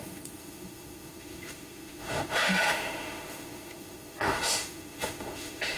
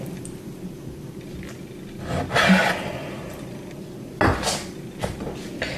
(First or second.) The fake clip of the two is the first